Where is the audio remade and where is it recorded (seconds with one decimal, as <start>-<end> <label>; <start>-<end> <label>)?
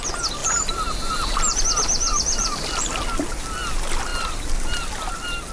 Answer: 0.0-0.4 recorded; 0.4-1.6 remade; 1.6-2.1 recorded; 2.1-3.0 remade; 3.0-5.5 recorded